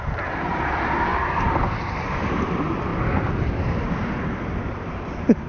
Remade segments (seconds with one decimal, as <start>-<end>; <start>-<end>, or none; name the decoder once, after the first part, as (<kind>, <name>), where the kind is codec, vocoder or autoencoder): 0.0-2.9 (vocoder, BigVGAN v2); 4.7-5.5